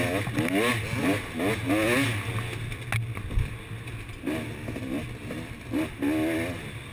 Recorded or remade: recorded